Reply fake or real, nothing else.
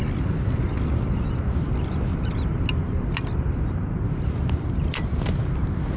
real